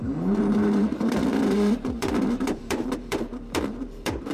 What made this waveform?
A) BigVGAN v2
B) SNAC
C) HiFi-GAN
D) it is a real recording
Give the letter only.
A